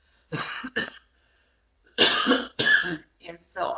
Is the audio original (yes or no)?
no